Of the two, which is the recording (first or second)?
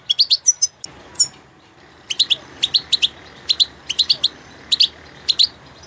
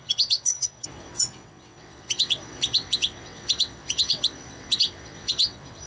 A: first